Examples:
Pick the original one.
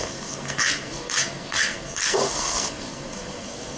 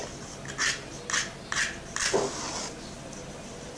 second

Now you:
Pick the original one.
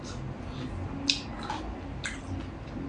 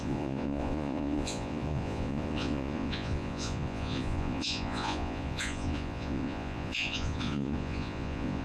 first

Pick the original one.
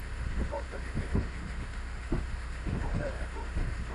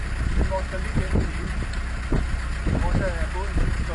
second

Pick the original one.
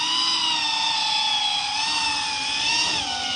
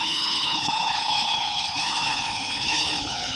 first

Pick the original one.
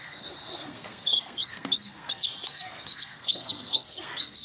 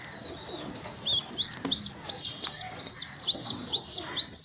second